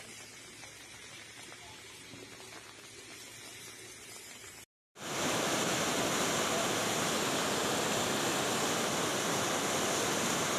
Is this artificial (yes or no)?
no